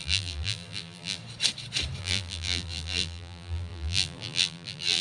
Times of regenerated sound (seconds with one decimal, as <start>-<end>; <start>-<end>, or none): 0.0-1.2; 2.0-5.0